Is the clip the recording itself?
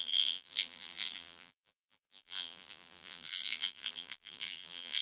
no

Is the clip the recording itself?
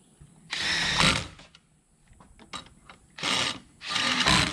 yes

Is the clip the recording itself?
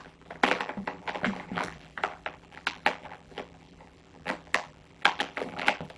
no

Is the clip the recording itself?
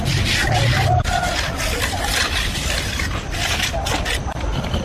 yes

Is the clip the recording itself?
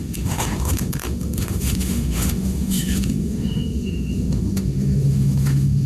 no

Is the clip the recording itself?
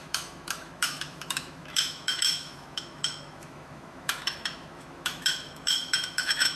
no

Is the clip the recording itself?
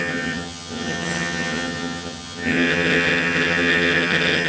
no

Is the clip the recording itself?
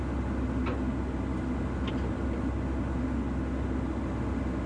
yes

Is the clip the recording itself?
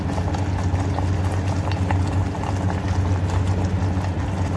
yes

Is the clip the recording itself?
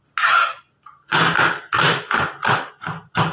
yes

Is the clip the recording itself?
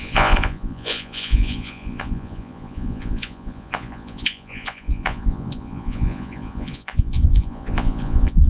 no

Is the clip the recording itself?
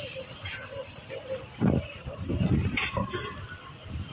yes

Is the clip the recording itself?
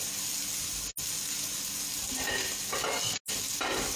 yes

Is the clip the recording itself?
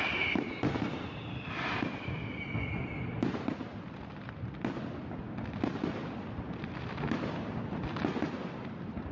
yes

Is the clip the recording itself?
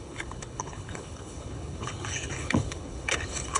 no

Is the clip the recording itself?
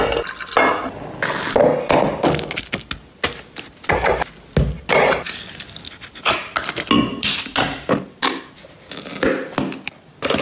yes